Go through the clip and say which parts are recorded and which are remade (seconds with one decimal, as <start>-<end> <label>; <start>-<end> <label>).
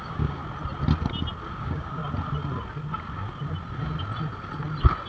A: 0.0-0.4 remade; 0.4-1.6 recorded; 1.6-2.0 remade; 2.0-5.1 recorded